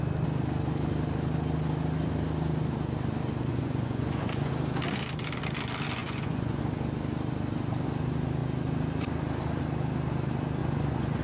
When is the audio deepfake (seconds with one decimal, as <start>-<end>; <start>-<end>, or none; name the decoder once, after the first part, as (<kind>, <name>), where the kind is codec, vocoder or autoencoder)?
3.5-4.5 (vocoder, Vocos); 6.0-6.6; 10.6-11.2